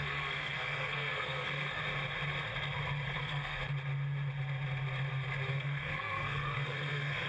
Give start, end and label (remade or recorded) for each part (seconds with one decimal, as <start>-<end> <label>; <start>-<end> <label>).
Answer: 0.0-1.8 remade; 1.8-3.2 recorded; 3.2-3.6 remade; 3.6-5.5 recorded; 5.5-7.3 remade